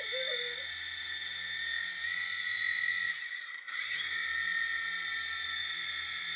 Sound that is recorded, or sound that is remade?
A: recorded